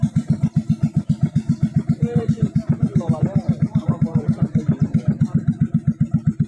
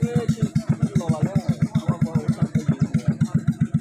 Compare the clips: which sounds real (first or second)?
second